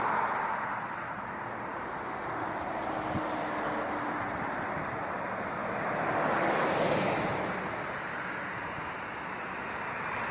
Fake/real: real